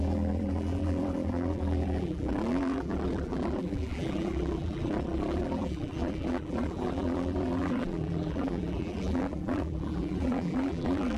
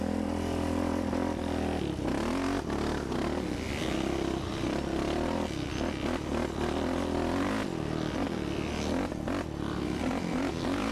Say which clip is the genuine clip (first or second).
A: second